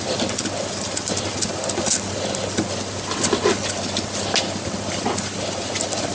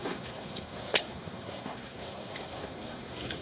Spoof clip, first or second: second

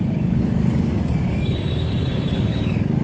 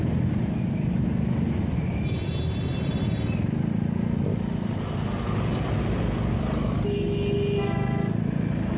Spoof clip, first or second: first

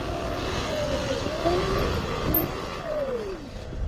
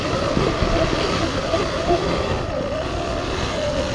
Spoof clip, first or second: second